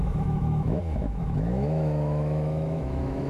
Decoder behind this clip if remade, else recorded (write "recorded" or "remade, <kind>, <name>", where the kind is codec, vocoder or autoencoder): remade, autoencoder, DAC-VAE